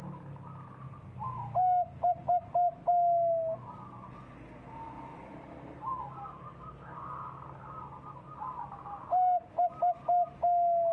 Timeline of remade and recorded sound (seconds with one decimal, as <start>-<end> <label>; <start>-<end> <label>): 0.0-5.1 recorded; 5.1-7.0 remade; 7.0-10.9 recorded